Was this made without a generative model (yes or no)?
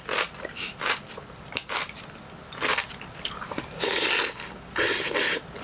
no